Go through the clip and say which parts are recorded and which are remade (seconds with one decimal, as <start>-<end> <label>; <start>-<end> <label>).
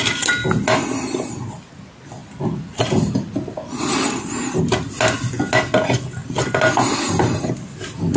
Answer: 0.0-2.2 recorded; 2.2-4.6 remade; 4.6-8.2 recorded